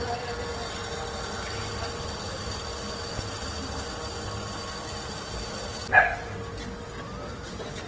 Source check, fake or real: real